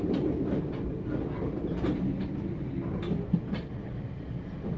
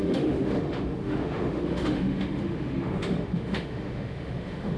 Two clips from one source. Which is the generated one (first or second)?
second